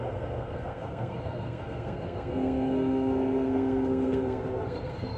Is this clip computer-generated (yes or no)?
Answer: yes